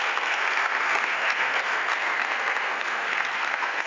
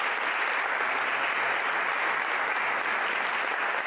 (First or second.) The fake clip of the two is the first